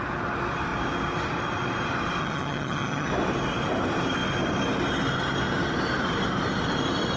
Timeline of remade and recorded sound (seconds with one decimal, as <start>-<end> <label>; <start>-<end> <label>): 0.0-2.2 recorded; 2.2-3.1 remade; 3.1-7.2 recorded